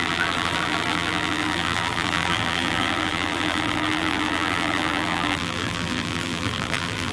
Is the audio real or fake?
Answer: fake